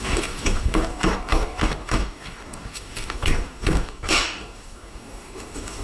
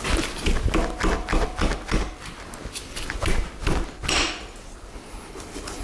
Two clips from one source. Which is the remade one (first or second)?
first